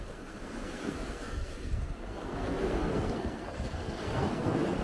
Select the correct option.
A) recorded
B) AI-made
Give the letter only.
B